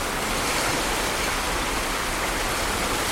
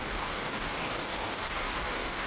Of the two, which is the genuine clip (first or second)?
first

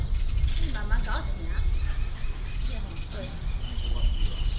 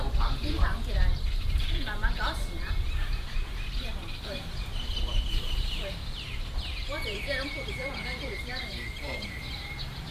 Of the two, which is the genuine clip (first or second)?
first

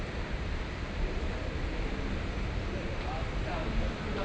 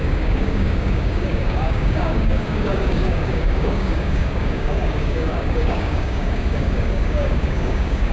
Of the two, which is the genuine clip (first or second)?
first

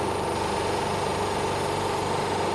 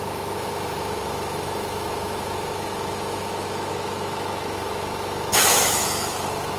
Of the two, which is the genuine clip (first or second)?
first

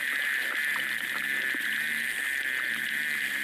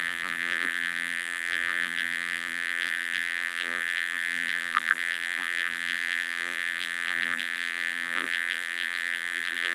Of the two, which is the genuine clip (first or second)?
first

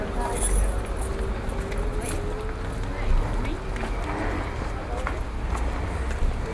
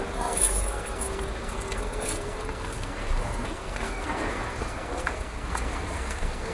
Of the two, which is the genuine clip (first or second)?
first